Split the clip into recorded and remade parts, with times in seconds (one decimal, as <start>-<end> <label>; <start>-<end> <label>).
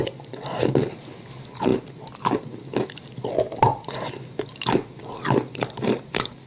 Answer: 0.0-6.5 recorded